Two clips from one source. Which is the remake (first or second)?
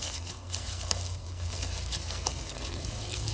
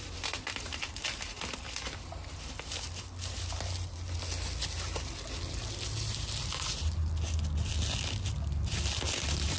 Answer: first